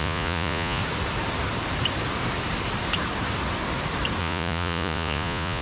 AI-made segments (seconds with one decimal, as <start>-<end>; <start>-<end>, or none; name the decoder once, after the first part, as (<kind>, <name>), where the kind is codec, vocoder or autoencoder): 0.0-0.8 (vocoder, Vocos); 4.2-5.6